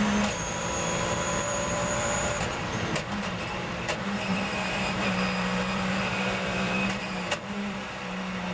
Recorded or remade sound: remade